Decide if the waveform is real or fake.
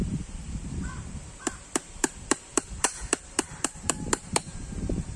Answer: fake